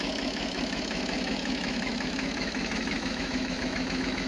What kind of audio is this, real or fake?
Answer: fake